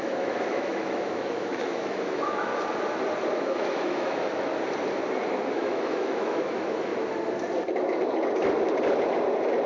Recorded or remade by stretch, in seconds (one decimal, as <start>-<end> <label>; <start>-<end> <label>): 0.0-2.5 remade; 2.5-3.3 recorded; 3.3-4.5 remade; 4.5-5.5 recorded; 5.5-6.9 remade; 6.9-9.7 recorded